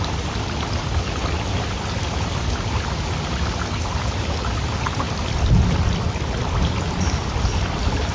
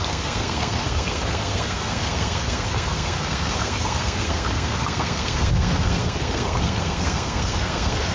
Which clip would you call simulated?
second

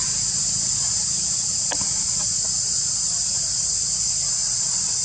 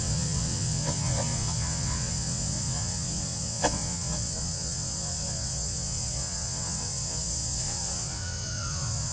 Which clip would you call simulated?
second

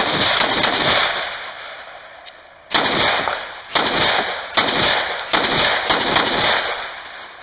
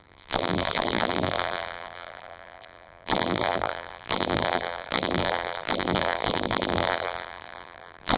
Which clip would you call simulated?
second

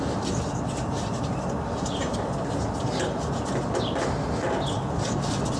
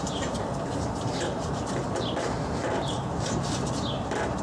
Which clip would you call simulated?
second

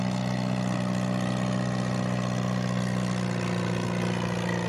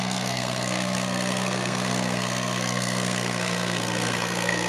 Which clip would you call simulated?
second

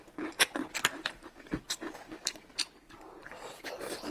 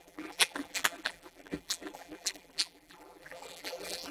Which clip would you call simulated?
second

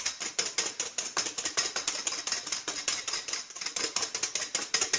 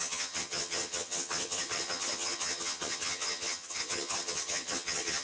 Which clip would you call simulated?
second